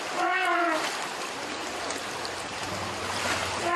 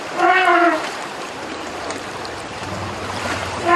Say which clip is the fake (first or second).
second